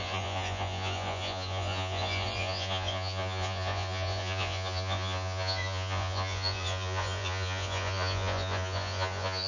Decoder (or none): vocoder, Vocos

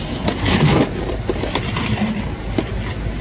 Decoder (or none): none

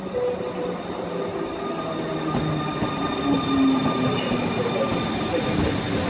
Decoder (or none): none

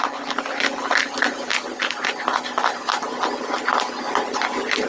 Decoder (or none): none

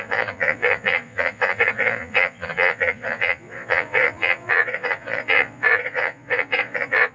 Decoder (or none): vocoder, Vocos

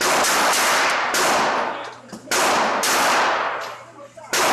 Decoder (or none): none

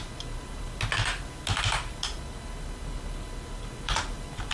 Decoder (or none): none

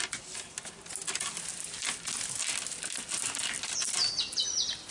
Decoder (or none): none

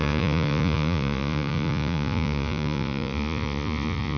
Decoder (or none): vocoder, Vocos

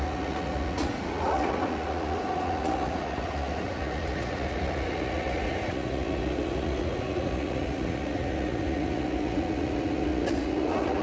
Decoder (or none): vocoder, Vocos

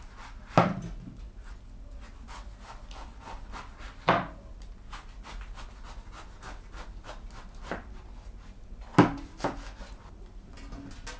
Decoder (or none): none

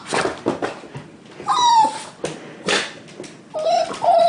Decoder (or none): none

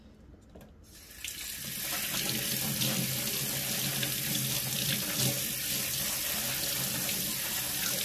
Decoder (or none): none